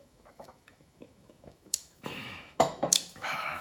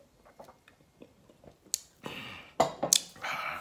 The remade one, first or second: first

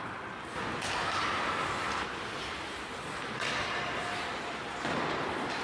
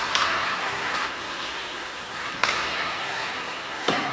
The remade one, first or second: second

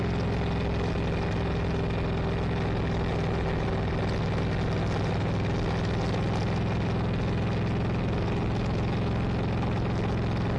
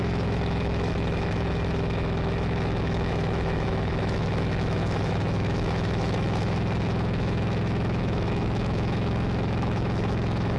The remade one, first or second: second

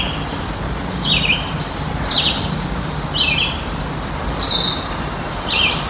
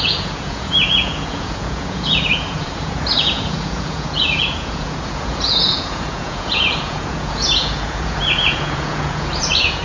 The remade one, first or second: second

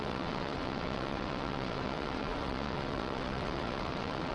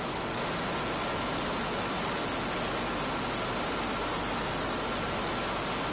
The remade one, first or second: first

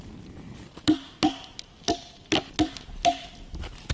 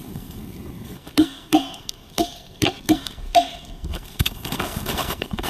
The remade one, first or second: second